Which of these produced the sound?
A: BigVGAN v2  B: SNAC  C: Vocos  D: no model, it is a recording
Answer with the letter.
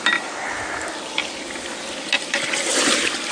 D